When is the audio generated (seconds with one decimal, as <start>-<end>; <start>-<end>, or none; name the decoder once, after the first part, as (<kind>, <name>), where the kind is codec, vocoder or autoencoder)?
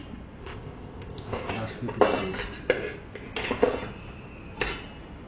0.4-1.5 (codec, ZipCodec)